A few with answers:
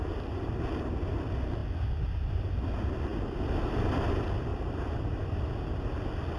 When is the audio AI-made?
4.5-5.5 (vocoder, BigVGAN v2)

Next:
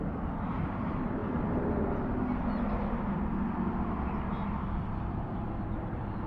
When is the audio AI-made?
0.0-1.2 (vocoder, BigVGAN v2); 4.9-6.3

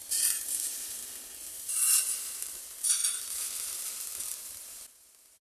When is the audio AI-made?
0.0-1.0 (vocoder, BigVGAN v2); 2.4-3.0; 4.4-5.5